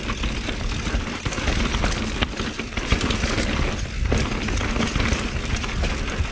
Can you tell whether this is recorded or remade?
recorded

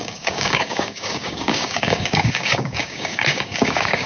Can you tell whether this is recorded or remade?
remade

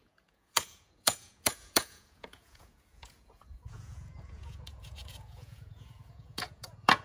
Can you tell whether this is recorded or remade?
remade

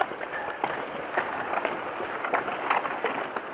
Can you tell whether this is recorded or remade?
recorded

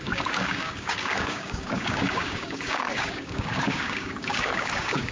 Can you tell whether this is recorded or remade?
remade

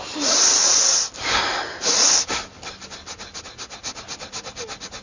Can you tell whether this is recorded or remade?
recorded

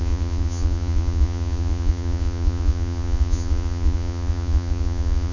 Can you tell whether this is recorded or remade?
remade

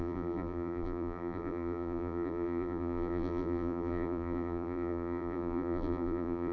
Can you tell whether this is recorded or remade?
remade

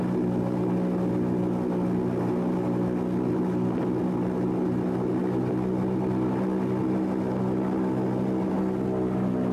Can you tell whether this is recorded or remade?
recorded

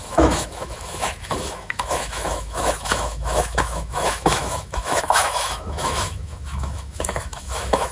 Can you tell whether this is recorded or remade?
remade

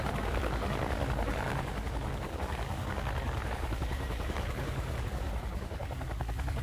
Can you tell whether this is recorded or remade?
remade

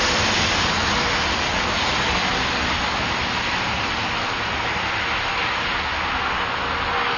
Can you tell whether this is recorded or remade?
recorded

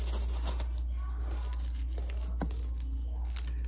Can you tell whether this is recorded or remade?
recorded